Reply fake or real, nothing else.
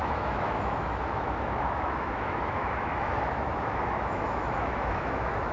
fake